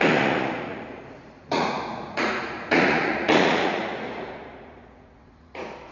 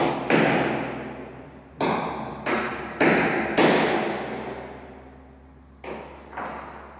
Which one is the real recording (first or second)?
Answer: second